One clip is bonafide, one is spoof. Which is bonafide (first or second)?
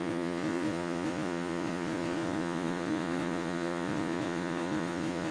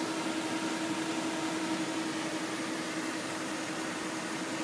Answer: second